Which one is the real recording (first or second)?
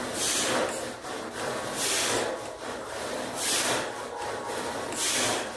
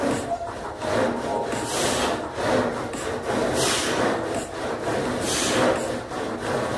second